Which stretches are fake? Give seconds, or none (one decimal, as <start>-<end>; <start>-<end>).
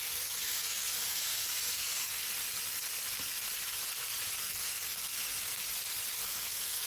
0.0-2.2; 4.4-5.6; 6.1-6.9